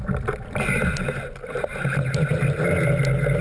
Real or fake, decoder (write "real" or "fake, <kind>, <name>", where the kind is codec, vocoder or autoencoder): real